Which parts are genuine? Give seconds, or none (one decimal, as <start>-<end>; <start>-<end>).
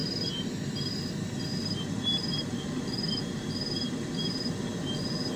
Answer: 3.1-5.4